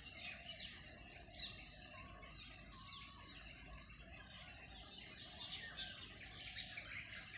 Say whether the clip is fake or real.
real